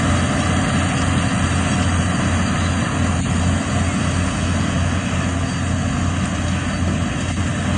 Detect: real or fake real